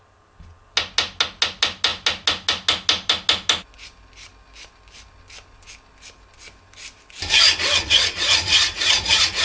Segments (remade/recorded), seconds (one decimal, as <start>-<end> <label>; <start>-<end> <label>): 0.0-7.8 recorded; 7.8-9.4 remade